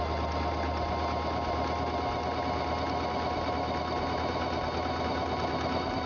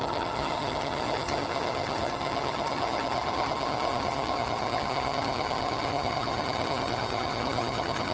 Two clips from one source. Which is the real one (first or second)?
first